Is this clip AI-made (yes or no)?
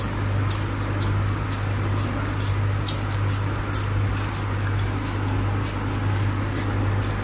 no